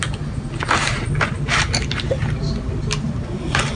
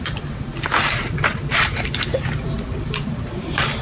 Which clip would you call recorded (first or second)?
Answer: first